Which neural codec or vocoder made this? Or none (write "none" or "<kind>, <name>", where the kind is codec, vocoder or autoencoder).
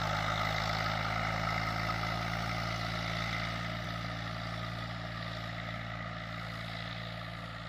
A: none